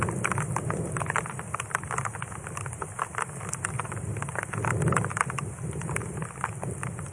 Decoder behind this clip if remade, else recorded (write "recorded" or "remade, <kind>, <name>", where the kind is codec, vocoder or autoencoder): recorded